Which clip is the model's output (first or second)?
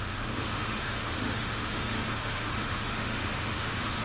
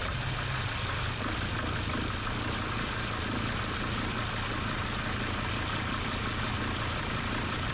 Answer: first